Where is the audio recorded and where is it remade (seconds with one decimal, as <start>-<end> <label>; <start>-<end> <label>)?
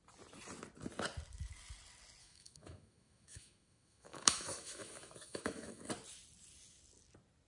0.0-2.2 recorded; 2.2-5.9 remade; 5.9-7.5 recorded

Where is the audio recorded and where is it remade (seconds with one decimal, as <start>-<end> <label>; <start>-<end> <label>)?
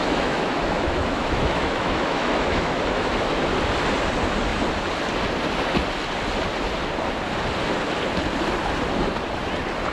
0.0-3.4 remade; 3.4-9.9 recorded